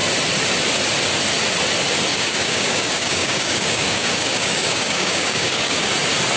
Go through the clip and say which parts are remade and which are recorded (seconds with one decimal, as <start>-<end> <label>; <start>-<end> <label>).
0.0-2.1 recorded; 2.1-5.9 remade; 5.9-6.4 recorded